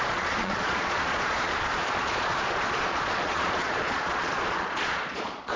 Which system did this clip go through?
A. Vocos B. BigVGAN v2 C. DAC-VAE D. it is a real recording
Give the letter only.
A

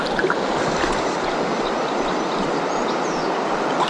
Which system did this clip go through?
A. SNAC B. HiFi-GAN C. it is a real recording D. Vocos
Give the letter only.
C